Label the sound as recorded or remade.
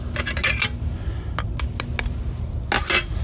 recorded